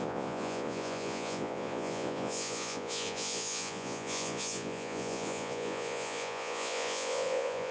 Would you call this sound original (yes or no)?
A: no